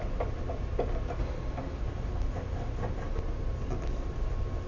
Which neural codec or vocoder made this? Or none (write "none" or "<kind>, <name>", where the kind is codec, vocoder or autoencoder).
none